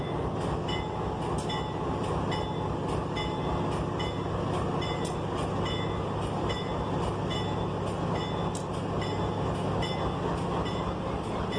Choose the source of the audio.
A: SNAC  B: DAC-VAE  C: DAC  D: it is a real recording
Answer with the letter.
D